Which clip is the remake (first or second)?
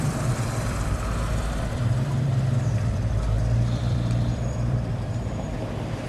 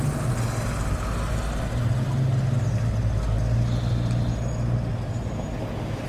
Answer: first